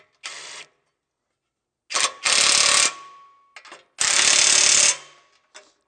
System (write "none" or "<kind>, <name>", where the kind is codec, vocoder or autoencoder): none